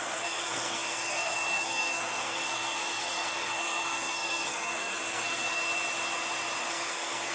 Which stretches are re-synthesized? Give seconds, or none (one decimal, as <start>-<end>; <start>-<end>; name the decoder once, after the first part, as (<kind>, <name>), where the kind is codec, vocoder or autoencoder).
0.0-5.6 (codec, SNAC); 6.7-7.3